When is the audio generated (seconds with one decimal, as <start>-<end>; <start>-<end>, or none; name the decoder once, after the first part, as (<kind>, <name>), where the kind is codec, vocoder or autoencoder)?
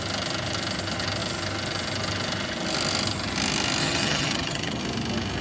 3.8-4.8 (vocoder, HiFi-GAN)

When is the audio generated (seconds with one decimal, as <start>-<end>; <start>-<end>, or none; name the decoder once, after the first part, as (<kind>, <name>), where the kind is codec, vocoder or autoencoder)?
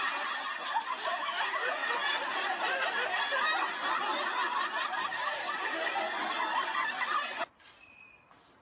1.8-2.9 (vocoder, BigVGAN v2)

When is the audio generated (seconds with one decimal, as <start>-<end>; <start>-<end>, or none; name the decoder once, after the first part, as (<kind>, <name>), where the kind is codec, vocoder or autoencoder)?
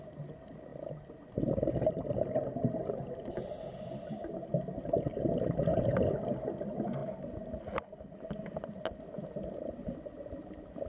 0.7-1.3 (vocoder, BigVGAN v2); 4.2-5.2; 7.0-7.6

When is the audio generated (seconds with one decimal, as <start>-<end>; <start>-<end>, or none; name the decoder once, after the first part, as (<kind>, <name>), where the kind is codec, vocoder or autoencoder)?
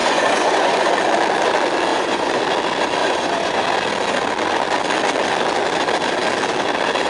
0.0-0.9 (vocoder, Vocos); 1.9-2.4; 3.0-3.6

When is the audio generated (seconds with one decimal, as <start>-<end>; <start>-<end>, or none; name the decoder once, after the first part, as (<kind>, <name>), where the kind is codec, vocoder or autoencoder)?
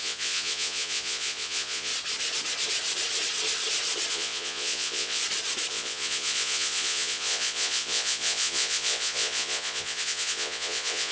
0.0-1.9 (vocoder, Vocos); 4.1-5.2; 5.7-11.1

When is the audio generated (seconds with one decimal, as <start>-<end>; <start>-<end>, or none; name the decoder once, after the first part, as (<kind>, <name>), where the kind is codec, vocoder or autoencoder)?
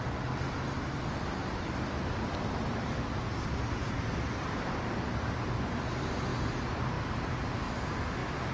1.4-5.7 (vocoder, BigVGAN v2); 6.3-7.3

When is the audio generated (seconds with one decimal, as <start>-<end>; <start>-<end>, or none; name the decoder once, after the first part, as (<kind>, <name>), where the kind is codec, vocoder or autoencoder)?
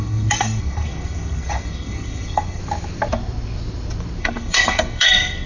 0.0-2.6 (codec, SNAC); 4.2-5.5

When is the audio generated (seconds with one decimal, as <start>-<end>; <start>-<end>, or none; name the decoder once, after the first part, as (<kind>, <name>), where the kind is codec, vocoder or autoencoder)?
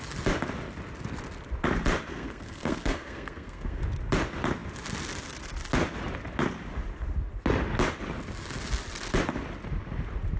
2.1-3.8 (codec, SNAC)